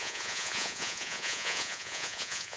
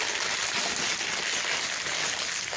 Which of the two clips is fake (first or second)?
first